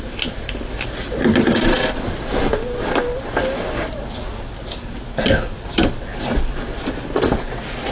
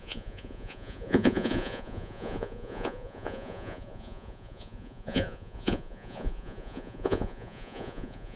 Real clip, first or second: first